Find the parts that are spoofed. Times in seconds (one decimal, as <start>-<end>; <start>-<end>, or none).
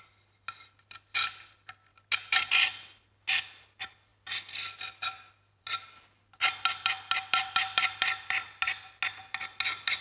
none